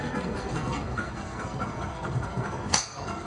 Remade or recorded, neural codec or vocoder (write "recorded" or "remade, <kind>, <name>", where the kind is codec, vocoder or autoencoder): remade, codec, SNAC